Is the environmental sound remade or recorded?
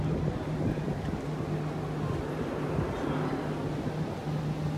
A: recorded